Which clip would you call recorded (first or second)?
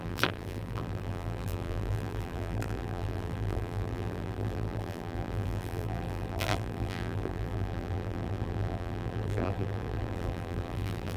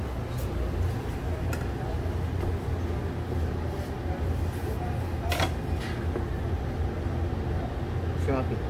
second